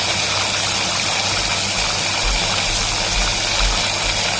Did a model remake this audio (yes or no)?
no